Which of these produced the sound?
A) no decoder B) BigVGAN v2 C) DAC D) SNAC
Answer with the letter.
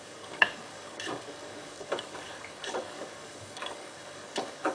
C